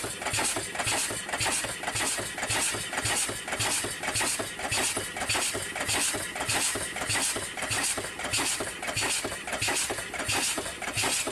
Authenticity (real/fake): real